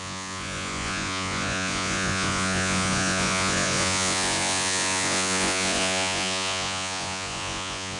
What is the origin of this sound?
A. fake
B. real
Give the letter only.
A